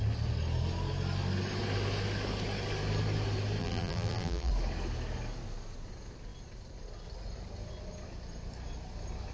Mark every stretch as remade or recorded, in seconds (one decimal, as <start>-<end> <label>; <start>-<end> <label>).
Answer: 0.0-3.6 recorded; 3.6-4.5 remade; 4.5-9.3 recorded